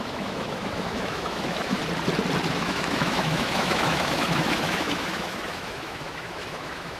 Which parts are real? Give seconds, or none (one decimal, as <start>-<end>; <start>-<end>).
1.8-2.5